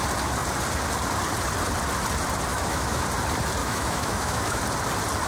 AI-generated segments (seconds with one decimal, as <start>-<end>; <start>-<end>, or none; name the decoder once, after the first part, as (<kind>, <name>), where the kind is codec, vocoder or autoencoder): 2.5-3.0 (autoencoder, DAC-VAE); 3.6-4.6